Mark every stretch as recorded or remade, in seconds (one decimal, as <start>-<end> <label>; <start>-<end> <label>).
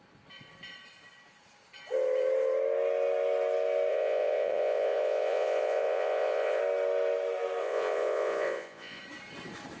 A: 0.0-3.9 recorded; 3.9-6.6 remade; 6.6-7.6 recorded; 7.6-9.0 remade; 9.0-9.8 recorded